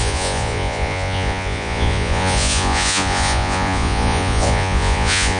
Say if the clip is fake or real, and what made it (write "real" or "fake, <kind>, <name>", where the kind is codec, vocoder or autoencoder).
fake, vocoder, Vocos